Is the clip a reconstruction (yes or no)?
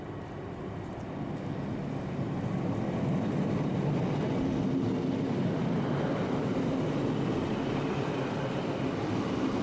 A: no